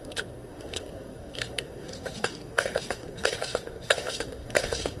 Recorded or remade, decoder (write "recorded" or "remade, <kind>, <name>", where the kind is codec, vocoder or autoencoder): remade, codec, SNAC